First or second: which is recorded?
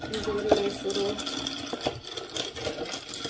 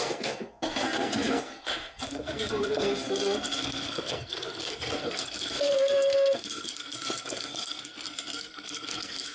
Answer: first